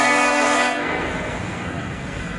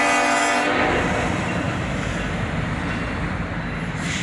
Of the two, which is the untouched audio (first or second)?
second